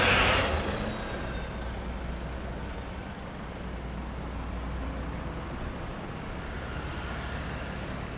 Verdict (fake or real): real